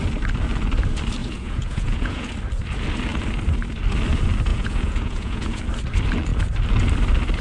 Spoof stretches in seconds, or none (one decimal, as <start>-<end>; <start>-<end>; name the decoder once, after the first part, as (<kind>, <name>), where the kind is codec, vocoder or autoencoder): 1.2-2.3 (vocoder, Vocos); 4.5-5.6